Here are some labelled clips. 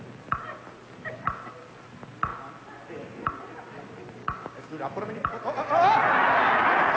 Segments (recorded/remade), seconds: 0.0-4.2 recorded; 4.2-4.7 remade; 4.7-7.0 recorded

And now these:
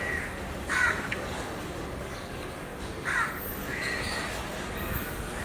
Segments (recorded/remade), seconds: 0.0-4.5 remade; 4.5-5.4 recorded

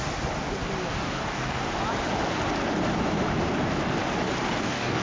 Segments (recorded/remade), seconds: 0.0-0.9 recorded; 0.9-1.6 remade; 1.6-4.6 recorded; 4.6-5.0 remade